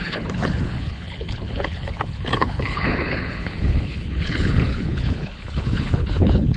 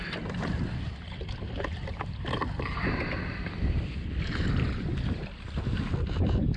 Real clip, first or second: second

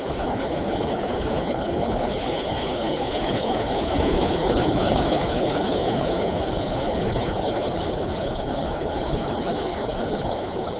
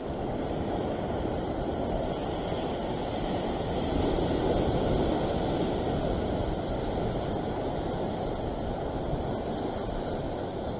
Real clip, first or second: second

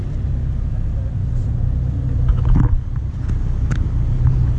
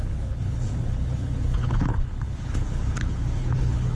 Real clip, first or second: first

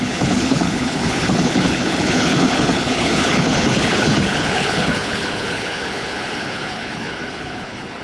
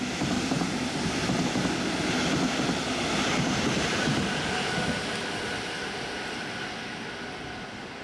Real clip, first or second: second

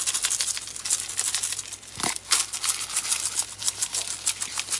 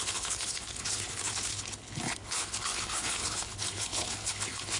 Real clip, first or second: first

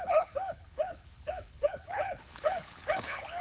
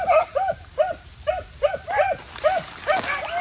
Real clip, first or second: second